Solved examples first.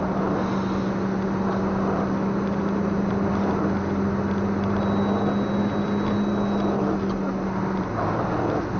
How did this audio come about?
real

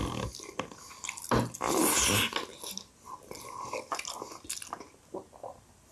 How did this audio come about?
real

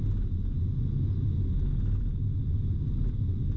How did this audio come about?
real